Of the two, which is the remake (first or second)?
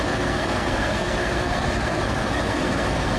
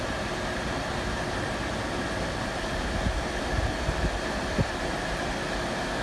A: first